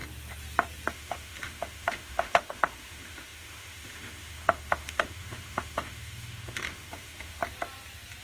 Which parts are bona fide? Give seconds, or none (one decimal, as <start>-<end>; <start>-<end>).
0.0-0.9; 7.4-8.2